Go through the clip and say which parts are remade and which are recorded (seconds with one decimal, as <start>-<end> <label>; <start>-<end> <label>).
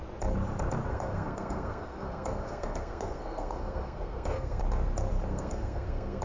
0.0-0.9 recorded; 0.9-4.6 remade; 4.6-5.3 recorded; 5.3-6.2 remade